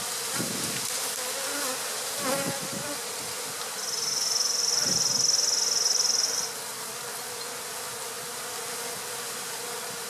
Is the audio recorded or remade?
recorded